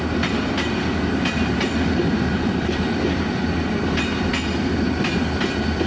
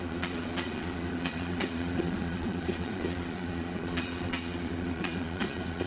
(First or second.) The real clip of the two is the first